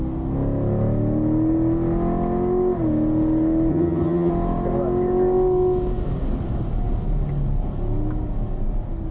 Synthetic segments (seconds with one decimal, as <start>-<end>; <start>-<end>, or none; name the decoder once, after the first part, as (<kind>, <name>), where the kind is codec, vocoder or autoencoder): 3.7-4.3 (vocoder, HiFi-GAN)